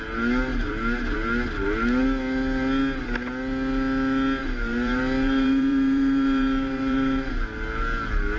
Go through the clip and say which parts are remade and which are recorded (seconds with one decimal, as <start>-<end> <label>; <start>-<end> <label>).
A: 0.0-4.4 recorded; 4.4-7.3 remade; 7.3-8.4 recorded